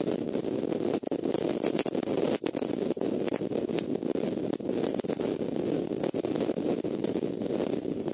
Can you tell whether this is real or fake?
real